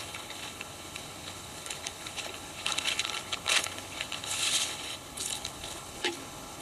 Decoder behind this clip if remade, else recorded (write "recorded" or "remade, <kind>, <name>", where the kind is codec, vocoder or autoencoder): remade, codec, HILCodec